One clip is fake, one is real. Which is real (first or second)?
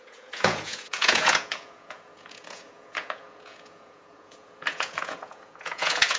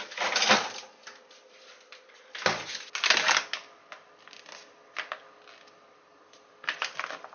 second